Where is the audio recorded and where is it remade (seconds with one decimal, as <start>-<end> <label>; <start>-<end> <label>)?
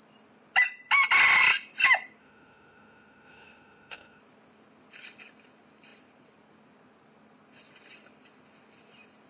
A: 0.0-2.2 recorded; 2.2-4.2 remade; 4.2-9.3 recorded